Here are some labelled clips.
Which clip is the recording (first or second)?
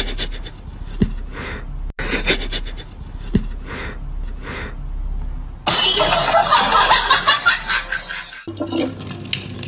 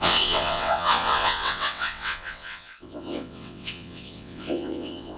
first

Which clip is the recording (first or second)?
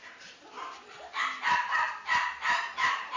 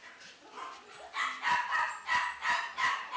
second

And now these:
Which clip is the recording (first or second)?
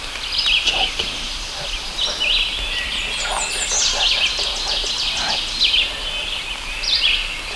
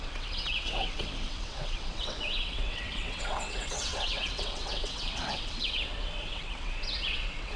first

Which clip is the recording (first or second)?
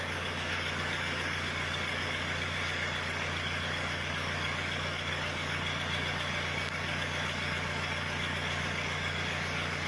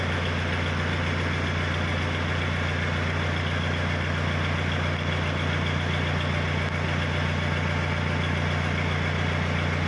second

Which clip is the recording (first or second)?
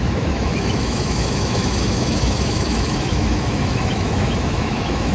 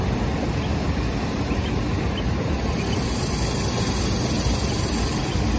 second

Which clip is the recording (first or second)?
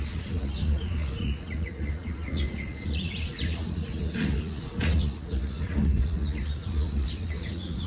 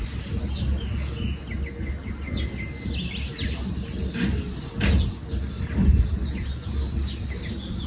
second